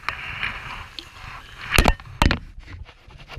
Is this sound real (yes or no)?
yes